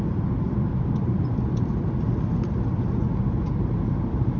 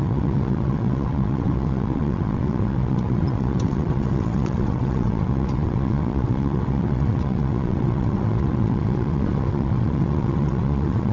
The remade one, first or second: second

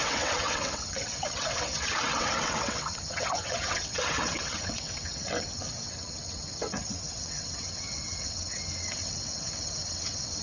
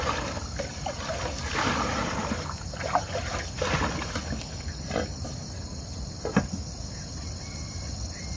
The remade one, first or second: first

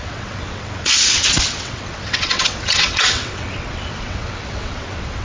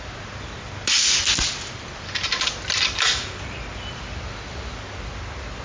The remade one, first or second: first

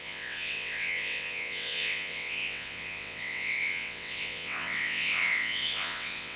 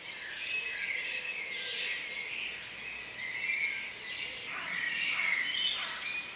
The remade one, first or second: first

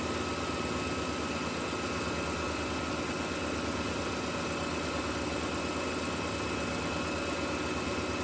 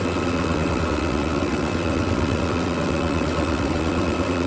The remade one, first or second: second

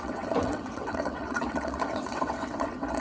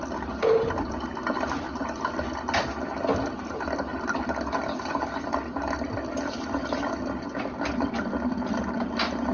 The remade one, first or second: first